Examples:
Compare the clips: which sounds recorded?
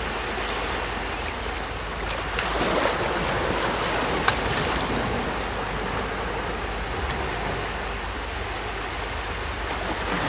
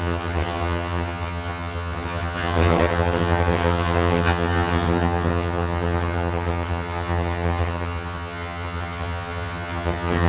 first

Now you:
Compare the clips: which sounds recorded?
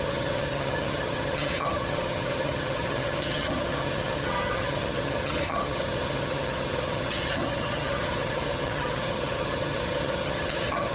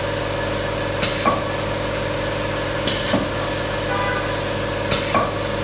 second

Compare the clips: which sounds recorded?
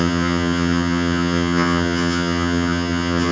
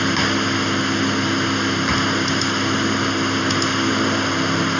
second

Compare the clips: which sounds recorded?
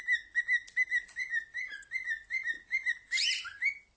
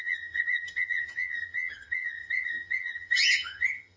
first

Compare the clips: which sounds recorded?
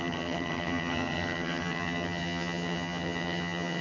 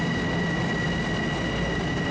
second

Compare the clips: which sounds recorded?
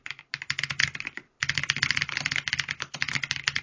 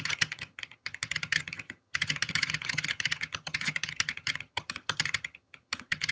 first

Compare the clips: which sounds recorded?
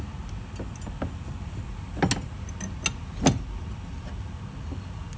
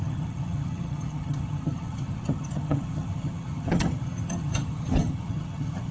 first